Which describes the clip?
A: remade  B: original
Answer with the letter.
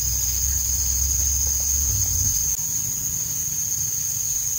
B